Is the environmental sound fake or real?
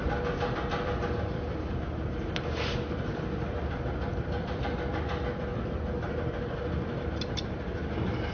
real